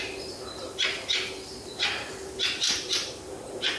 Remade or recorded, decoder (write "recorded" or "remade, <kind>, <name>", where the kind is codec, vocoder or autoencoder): recorded